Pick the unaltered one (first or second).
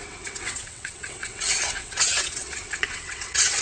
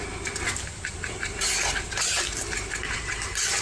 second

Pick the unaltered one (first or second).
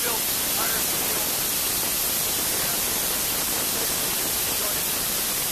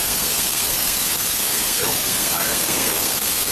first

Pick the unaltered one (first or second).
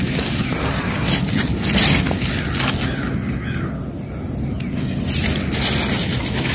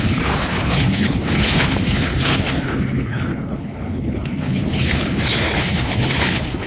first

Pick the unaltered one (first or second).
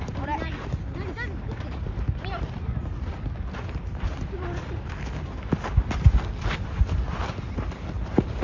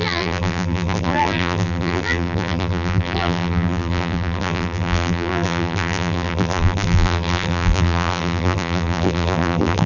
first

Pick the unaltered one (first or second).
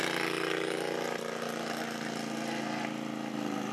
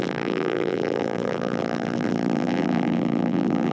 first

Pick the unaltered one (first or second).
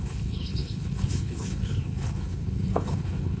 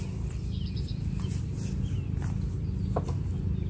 second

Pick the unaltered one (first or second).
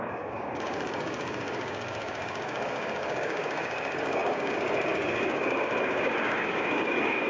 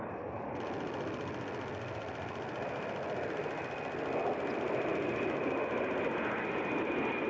second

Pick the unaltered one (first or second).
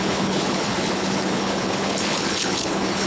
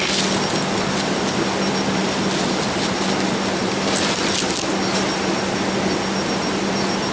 second